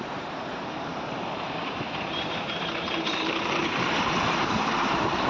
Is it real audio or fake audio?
fake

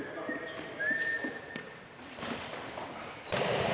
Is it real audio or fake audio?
fake